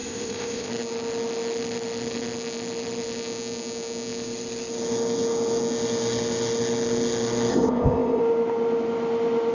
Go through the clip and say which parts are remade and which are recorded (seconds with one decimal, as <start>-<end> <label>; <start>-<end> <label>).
0.0-0.7 remade; 0.7-7.5 recorded; 7.5-8.2 remade; 8.2-9.5 recorded